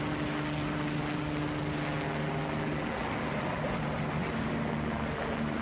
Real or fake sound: real